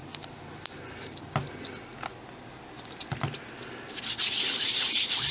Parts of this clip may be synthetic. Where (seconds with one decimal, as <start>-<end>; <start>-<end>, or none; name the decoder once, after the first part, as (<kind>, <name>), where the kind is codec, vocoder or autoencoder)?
0.0-3.2 (vocoder, BigVGAN v2)